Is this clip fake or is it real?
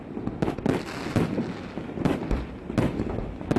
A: real